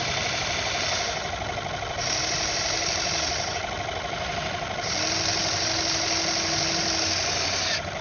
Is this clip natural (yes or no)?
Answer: yes